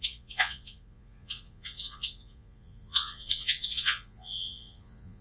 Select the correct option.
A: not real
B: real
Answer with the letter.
A